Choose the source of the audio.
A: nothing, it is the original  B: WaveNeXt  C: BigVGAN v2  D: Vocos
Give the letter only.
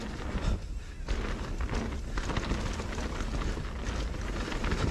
A